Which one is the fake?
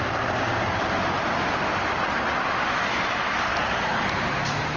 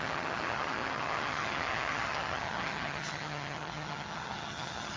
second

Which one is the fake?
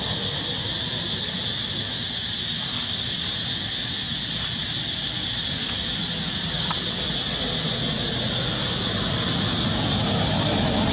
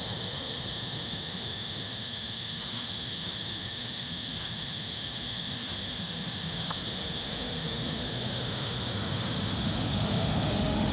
second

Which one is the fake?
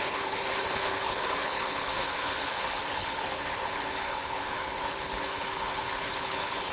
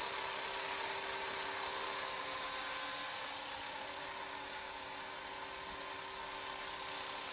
first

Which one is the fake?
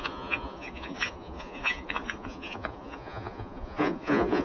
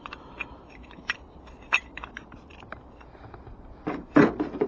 first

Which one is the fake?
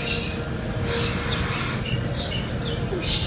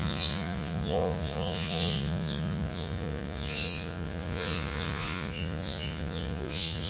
second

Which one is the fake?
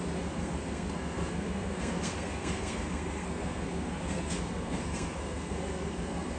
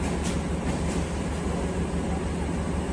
first